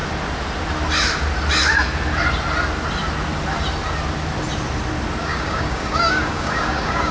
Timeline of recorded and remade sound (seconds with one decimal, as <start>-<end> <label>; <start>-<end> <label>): 0.0-5.2 recorded; 5.2-7.1 remade